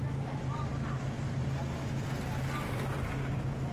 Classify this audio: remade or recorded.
recorded